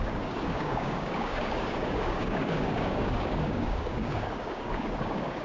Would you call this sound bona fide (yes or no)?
no